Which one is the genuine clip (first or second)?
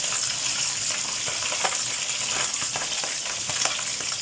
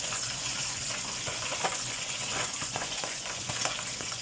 first